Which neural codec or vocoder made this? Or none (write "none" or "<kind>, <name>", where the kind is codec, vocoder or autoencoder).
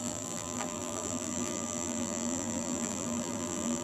vocoder, BigVGAN v2